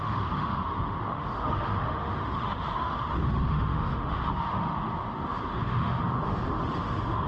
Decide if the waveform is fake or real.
fake